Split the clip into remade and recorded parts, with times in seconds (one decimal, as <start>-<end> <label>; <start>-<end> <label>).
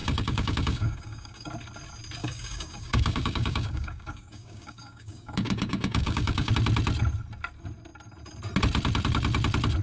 0.0-1.5 remade; 1.5-2.2 recorded; 2.2-6.5 remade; 6.5-9.8 recorded